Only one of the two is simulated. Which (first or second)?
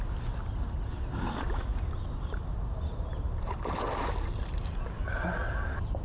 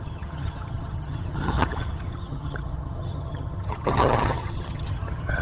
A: second